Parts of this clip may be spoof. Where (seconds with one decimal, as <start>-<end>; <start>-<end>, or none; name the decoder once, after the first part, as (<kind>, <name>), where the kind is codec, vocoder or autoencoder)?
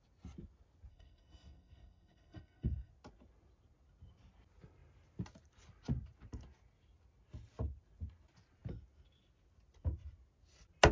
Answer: 0.9-2.9 (codec, SNAC)